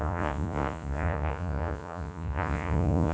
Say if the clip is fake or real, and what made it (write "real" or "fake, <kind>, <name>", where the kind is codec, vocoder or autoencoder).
fake, vocoder, Vocos